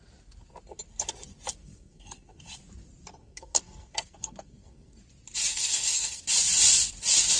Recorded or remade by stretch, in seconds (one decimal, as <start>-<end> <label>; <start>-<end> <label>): 0.0-1.6 recorded; 1.6-2.4 remade; 2.4-3.2 recorded; 3.2-5.0 remade; 5.0-5.5 recorded; 5.5-6.2 remade; 6.2-7.4 recorded